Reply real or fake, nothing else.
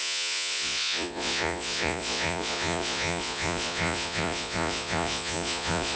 fake